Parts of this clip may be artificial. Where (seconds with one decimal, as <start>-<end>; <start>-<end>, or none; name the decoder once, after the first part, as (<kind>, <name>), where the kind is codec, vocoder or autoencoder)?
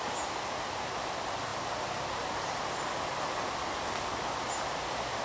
none